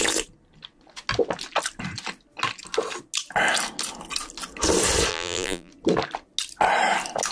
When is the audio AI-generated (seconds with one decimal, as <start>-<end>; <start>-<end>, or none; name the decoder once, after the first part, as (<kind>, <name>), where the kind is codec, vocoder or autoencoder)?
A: 5.1-5.7 (vocoder, BigVGAN v2)